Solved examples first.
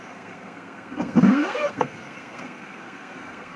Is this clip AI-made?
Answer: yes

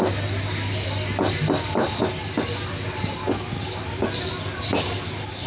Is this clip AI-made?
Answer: no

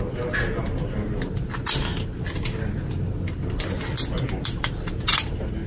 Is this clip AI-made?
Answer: no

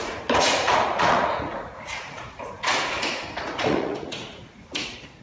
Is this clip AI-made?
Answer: yes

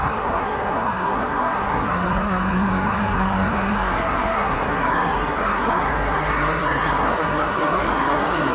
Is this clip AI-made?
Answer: yes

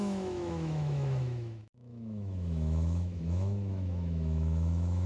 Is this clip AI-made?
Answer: yes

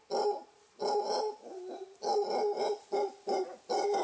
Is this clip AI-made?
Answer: no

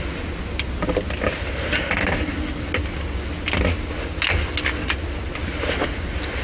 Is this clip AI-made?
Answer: no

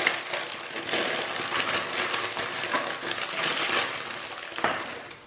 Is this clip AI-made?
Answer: no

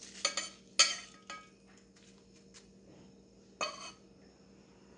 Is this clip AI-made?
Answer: no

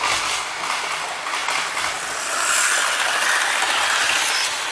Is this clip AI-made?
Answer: no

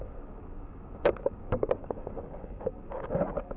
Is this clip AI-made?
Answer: yes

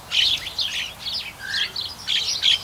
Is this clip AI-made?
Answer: no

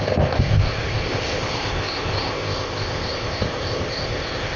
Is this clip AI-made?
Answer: yes